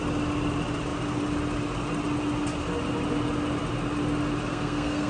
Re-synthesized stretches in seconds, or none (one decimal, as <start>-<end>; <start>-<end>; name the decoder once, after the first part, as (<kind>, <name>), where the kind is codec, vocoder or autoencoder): 4.5-5.1 (codec, SNAC)